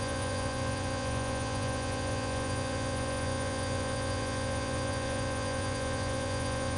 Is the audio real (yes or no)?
no